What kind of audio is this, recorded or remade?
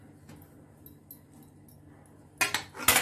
recorded